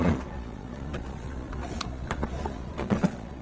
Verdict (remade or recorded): remade